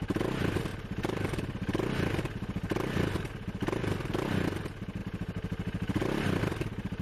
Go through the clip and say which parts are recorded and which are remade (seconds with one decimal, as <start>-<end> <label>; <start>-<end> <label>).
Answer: 0.0-5.0 recorded; 5.0-6.0 remade; 6.0-7.0 recorded